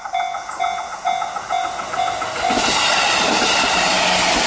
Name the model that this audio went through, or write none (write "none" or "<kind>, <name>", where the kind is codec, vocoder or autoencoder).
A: none